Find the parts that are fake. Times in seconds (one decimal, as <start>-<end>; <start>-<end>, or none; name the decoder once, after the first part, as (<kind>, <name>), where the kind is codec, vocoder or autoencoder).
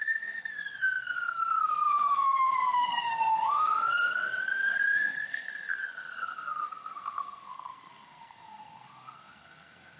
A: 0.0-10.0 (codec, SNAC)